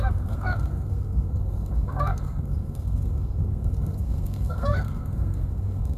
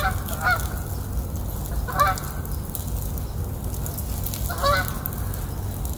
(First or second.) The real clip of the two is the second